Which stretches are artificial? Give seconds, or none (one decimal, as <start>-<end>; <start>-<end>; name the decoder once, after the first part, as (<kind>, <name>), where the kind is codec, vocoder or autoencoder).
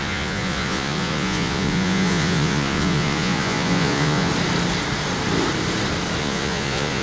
0.0-4.3 (vocoder, Vocos); 6.2-7.0